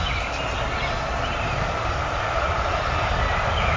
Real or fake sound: real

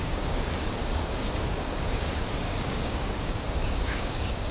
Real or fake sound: fake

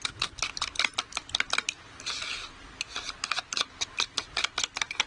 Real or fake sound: real